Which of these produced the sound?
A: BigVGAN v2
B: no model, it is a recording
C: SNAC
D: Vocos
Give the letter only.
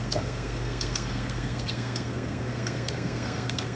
C